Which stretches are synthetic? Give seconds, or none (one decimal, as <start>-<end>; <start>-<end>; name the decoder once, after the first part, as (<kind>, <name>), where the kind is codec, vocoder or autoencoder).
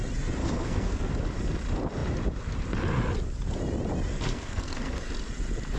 0.4-1.1 (codec, SNAC); 4.1-5.1